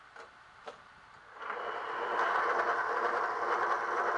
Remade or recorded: recorded